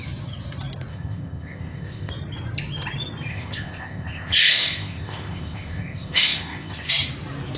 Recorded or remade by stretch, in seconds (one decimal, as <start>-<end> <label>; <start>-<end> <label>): 0.0-0.9 recorded; 0.9-2.1 remade; 2.1-3.3 recorded; 3.3-6.9 remade; 6.9-7.6 recorded